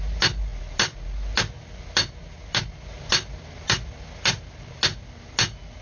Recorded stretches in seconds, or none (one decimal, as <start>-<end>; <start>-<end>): 0.0-5.8

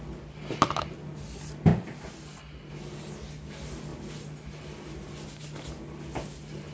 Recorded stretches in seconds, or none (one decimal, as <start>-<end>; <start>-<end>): 0.0-6.7

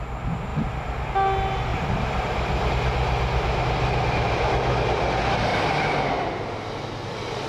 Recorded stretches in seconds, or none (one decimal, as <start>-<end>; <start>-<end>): 0.0-0.5; 1.1-1.7; 2.7-5.5; 6.8-7.5